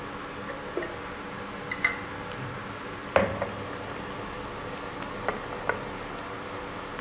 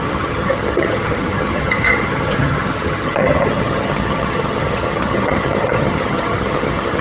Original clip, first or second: first